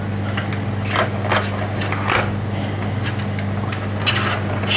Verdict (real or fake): real